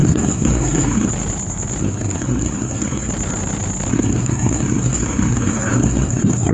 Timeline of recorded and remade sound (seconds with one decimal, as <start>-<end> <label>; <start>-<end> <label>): 0.0-1.1 remade; 1.1-1.8 recorded; 1.8-3.1 remade; 3.1-3.9 recorded; 3.9-6.5 remade